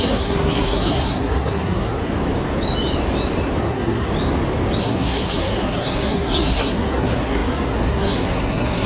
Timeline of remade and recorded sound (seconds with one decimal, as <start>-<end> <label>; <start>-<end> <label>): 0.0-2.1 remade; 2.1-3.6 recorded; 3.6-4.1 remade; 4.1-4.8 recorded; 4.8-8.9 remade